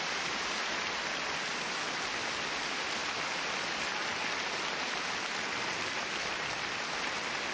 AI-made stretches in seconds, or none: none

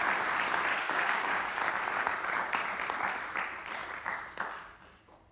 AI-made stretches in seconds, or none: 0.7-1.7

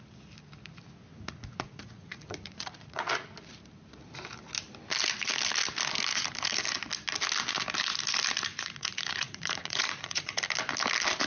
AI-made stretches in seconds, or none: 1.1-3.1; 8.5-10.4

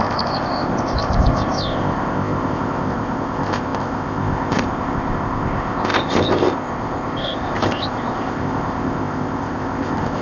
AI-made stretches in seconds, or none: 0.0-10.2